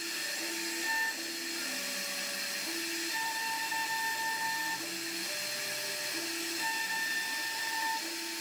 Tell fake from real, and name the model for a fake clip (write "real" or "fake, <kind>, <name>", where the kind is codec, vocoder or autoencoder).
real